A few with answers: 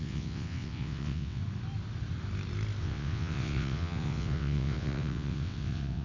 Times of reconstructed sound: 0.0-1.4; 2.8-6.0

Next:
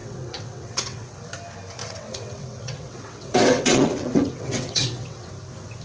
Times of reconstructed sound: 0.0-1.2; 1.8-5.3

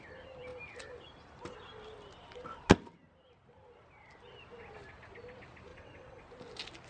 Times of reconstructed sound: 5.7-6.2

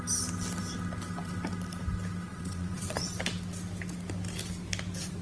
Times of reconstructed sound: 2.3-3.1

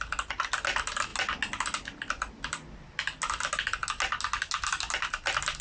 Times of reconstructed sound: none

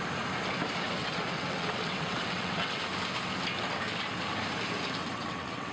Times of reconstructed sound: 1.0-2.8; 5.0-5.7

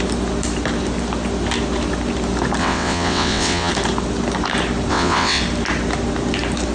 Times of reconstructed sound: 2.6-3.7; 4.9-5.4

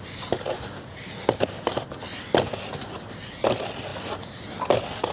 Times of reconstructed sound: none